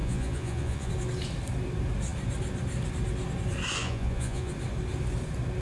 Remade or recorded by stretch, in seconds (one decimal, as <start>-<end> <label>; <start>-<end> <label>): 0.0-0.9 remade; 0.9-3.8 recorded; 3.8-4.5 remade; 4.5-5.6 recorded